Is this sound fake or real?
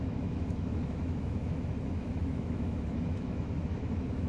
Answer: fake